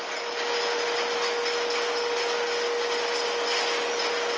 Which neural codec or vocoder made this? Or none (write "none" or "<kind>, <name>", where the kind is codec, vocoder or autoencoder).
none